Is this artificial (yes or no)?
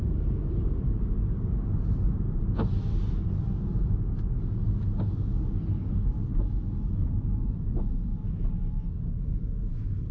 no